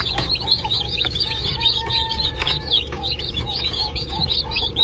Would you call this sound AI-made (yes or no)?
yes